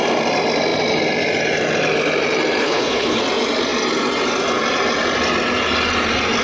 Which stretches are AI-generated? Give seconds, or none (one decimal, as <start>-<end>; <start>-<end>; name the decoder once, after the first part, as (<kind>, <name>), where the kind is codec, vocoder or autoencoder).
2.6-3.2 (codec, HILCodec)